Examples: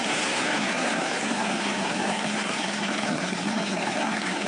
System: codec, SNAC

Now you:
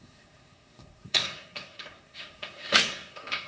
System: codec, SNAC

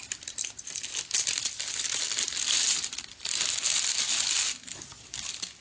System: none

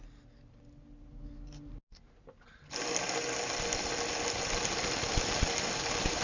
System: none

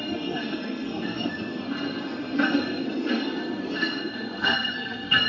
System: codec, SNAC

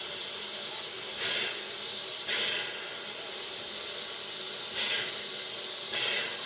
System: none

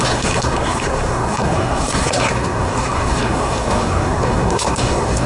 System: codec, SNAC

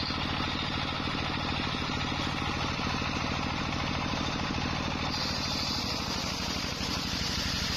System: none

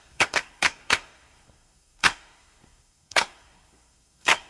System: codec, SNAC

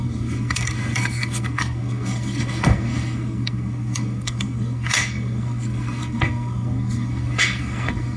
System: codec, SNAC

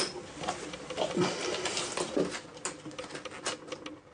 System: none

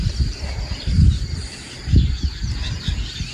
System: none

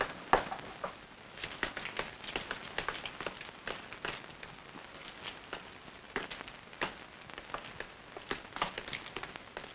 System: none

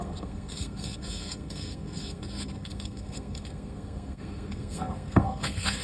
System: codec, SNAC